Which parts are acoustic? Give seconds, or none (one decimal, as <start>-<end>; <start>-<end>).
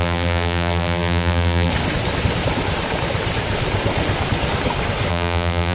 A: 1.7-5.1